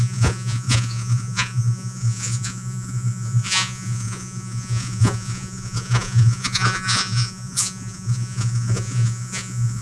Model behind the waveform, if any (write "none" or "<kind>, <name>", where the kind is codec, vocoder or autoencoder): vocoder, Vocos